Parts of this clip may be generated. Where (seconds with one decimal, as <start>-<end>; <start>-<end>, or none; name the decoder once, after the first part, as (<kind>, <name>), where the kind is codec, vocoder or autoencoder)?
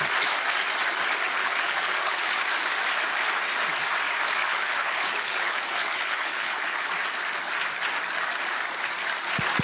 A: 1.4-2.4 (codec, HILCodec); 4.4-6.9